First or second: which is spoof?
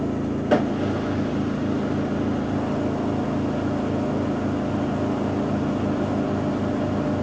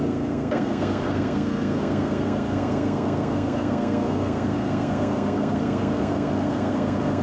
second